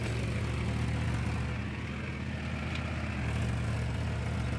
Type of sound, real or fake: real